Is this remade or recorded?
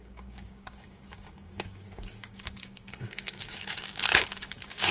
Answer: remade